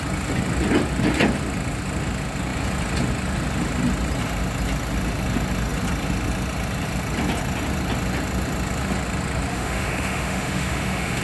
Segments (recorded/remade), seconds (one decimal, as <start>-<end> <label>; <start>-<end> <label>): 0.0-9.5 recorded; 9.5-11.2 remade